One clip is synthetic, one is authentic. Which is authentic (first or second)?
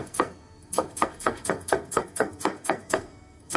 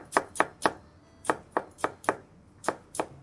second